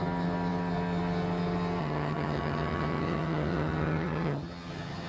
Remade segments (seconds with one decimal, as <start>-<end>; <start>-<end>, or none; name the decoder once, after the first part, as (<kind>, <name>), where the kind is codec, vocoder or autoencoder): 1.8-5.1 (vocoder, HiFi-GAN)